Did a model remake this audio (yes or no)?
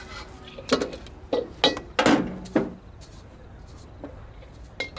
no